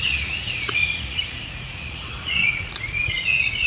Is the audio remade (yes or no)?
yes